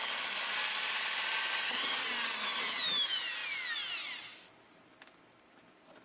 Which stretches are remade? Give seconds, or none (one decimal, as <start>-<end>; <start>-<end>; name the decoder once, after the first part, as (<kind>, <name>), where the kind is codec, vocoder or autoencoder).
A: none